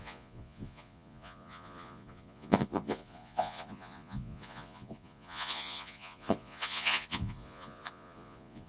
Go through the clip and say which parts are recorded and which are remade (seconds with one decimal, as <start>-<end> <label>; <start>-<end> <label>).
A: 0.0-8.7 remade